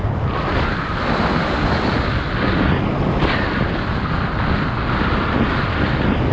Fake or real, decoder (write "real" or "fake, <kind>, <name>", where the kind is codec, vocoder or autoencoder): real